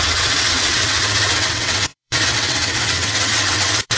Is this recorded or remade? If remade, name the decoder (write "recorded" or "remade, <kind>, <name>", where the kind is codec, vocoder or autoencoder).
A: remade, vocoder, WaveNeXt